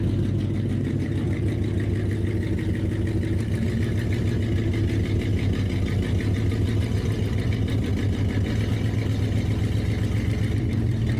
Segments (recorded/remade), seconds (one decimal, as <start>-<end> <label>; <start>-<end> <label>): 0.0-5.3 recorded; 5.3-7.9 remade; 7.9-11.2 recorded